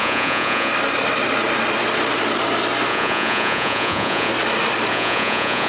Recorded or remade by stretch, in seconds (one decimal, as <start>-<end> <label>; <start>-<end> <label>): 0.0-0.7 remade; 0.7-2.9 recorded; 2.9-4.3 remade; 4.3-4.9 recorded; 4.9-5.7 remade